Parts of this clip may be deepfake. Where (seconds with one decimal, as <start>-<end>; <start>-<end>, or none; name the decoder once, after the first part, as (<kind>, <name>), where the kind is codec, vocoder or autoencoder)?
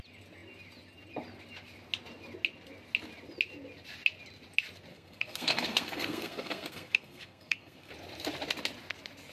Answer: 4.9-7.9 (codec, SNAC)